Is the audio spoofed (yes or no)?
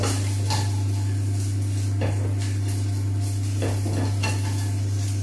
no